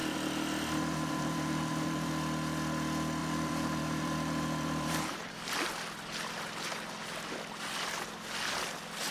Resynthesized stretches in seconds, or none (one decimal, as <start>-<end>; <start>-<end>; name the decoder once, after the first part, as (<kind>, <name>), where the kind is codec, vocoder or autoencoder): 0.0-2.1 (vocoder, BigVGAN v2); 3.2-5.3